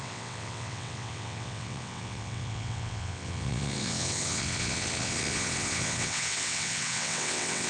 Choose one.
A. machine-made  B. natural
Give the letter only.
A